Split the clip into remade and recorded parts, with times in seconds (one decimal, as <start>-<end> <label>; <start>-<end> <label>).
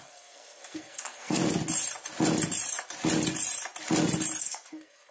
0.0-1.4 remade; 1.4-4.4 recorded; 4.4-5.1 remade